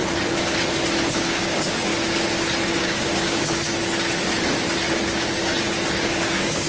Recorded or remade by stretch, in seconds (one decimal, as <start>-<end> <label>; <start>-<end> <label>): 0.0-1.1 recorded; 1.1-1.9 remade; 1.9-2.7 recorded; 2.7-3.7 remade; 3.7-5.9 recorded; 5.9-6.7 remade